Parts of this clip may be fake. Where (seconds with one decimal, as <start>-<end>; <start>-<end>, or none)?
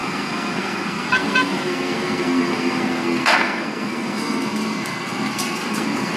0.0-6.2